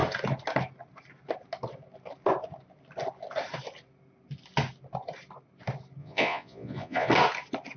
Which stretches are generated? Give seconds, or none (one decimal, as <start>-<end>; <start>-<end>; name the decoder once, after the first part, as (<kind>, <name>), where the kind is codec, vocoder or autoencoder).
6.0-7.1 (vocoder, Vocos)